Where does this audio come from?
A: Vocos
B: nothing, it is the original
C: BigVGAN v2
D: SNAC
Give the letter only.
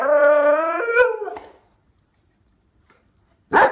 C